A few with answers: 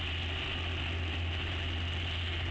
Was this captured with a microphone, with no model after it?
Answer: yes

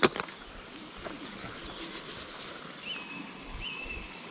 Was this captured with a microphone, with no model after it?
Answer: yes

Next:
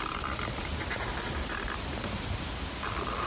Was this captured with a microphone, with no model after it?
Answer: yes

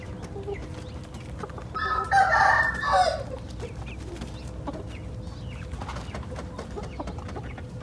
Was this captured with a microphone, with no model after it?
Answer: yes